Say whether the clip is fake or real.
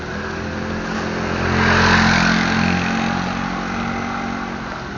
real